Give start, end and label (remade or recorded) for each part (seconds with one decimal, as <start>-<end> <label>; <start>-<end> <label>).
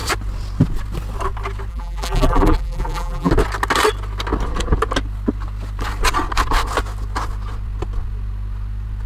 0.0-1.7 recorded; 1.7-3.3 remade; 3.3-9.1 recorded